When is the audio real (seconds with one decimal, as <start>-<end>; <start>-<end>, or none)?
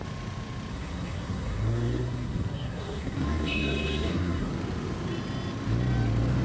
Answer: 0.0-0.7; 4.5-6.4